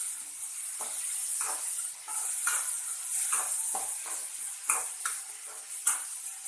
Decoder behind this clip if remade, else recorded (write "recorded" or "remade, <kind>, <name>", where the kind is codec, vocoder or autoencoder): recorded